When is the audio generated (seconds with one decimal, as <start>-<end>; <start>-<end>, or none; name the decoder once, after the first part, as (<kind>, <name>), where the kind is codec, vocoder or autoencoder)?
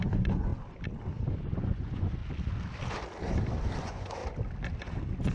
0.0-0.5 (vocoder, Vocos); 1.3-2.2; 3.8-4.2